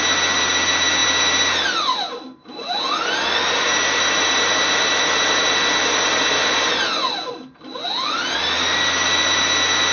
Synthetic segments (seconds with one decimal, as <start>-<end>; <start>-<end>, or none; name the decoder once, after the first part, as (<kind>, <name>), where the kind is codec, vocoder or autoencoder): none